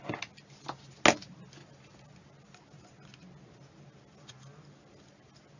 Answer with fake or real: real